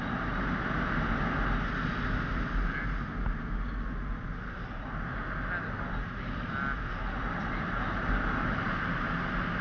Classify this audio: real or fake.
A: real